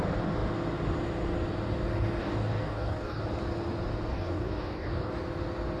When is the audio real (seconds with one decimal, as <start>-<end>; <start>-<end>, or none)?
0.0-2.2; 3.2-4.1; 5.1-5.8